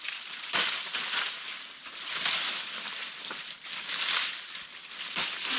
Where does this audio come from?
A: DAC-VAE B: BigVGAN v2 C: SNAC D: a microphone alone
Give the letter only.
B